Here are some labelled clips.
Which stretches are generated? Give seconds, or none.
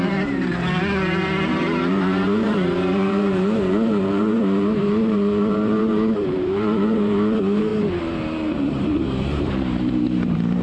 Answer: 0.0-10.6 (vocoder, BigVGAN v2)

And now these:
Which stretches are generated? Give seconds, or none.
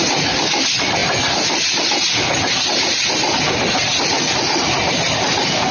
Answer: none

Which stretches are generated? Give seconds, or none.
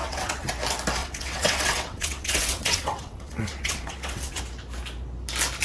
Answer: 0.0-0.5 (vocoder, WaveNeXt); 1.0-4.4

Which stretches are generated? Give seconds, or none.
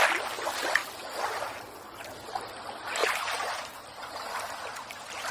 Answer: 3.0-4.7 (vocoder, BigVGAN v2)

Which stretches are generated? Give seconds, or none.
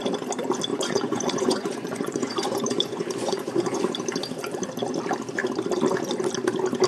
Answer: 0.7-3.8 (vocoder, Vocos)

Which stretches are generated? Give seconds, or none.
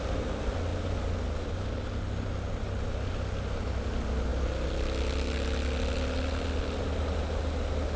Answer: none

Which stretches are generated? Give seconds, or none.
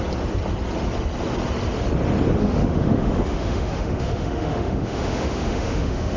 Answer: 2.4-6.2 (autoencoder, DAC-VAE)